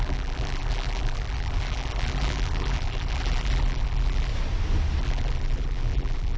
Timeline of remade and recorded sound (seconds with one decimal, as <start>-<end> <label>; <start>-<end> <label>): 0.0-4.3 remade; 4.3-5.0 recorded; 5.0-6.4 remade

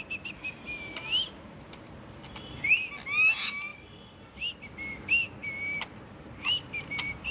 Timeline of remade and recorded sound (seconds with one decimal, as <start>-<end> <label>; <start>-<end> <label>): 0.0-7.3 recorded

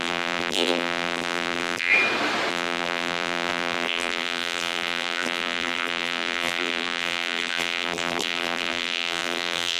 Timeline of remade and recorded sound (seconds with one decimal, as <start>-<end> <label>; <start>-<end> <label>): 0.0-1.9 remade; 1.9-2.5 recorded; 2.5-9.8 remade

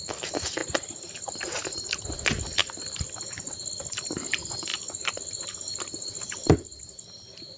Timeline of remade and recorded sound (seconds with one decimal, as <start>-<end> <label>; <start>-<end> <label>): 0.0-0.6 remade; 0.6-1.3 recorded; 1.3-4.7 remade; 4.7-6.8 recorded; 6.8-7.6 remade

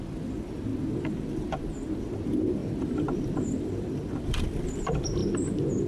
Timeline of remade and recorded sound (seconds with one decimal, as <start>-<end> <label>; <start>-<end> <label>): 0.0-0.7 recorded; 0.7-1.6 remade; 1.6-2.6 recorded; 2.6-4.7 remade; 4.7-5.9 recorded